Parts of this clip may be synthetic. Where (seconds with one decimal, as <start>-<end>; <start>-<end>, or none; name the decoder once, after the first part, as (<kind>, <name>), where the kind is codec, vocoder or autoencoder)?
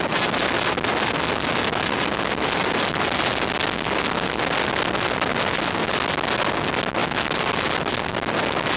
none